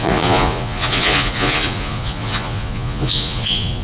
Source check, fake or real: fake